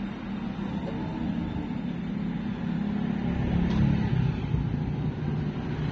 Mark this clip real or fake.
real